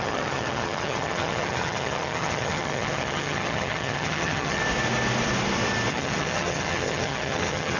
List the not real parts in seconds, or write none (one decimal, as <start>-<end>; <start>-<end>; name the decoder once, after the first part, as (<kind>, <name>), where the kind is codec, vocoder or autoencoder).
0.0-4.6 (vocoder, HiFi-GAN); 5.9-7.8